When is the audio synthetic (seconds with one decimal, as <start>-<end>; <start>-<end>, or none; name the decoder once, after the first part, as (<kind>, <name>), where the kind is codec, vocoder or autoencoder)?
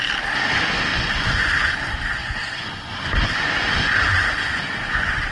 0.9-1.8 (vocoder, Vocos); 2.2-5.3